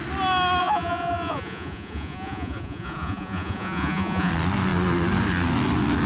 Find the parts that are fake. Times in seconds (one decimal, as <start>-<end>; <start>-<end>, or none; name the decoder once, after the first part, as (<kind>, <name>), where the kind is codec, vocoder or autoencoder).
0.6-4.3 (vocoder, Vocos)